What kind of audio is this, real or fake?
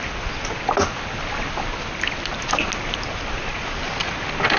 real